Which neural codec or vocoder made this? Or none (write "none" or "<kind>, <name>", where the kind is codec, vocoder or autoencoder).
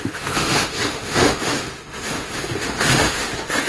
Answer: autoencoder, DAC-VAE